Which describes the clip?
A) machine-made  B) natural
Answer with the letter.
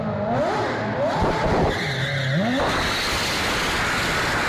B